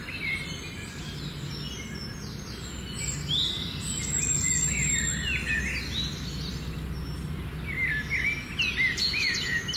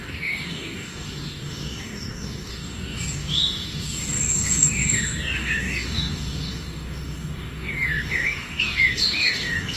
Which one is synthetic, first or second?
second